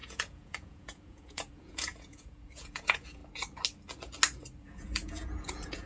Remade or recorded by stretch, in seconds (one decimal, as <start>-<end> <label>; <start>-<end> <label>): 0.0-3.2 remade; 3.2-4.6 recorded; 4.6-5.9 remade